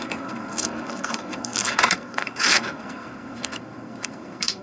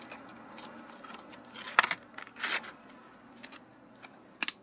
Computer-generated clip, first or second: first